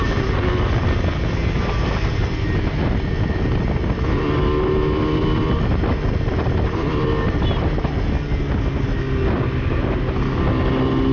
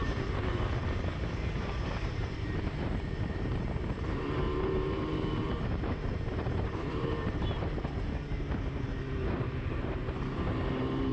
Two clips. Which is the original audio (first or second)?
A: first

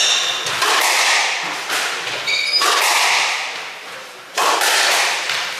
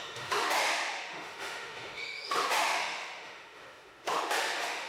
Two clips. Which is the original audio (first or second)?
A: first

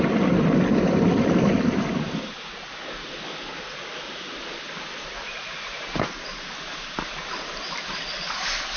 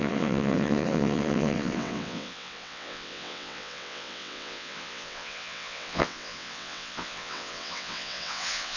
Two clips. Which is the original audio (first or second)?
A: first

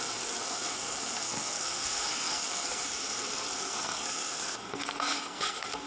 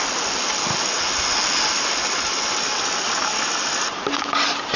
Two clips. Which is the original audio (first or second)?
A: second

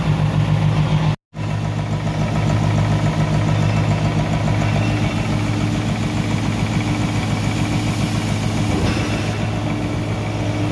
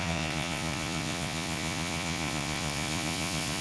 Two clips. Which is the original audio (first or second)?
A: first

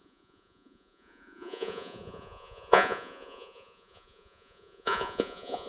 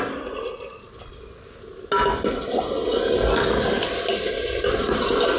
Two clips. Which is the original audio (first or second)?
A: second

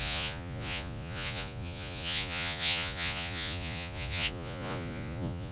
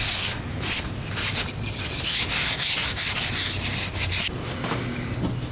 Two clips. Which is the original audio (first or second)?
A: second